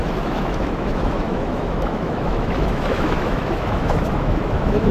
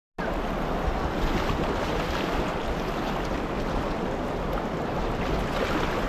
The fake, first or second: first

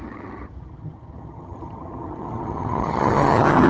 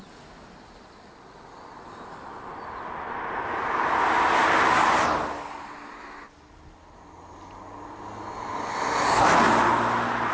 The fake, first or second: first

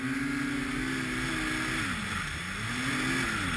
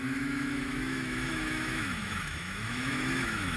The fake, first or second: second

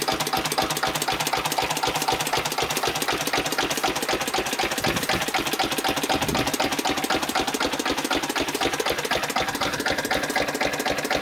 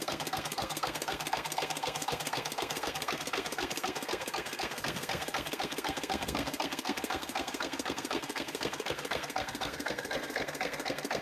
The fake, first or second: second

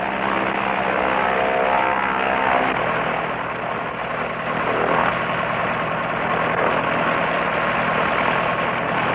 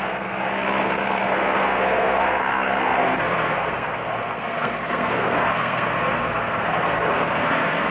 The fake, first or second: second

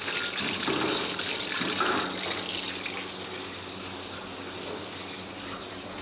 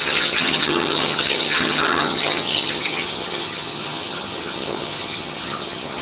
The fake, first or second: second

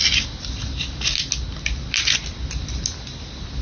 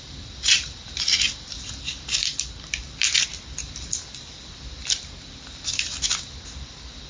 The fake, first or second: second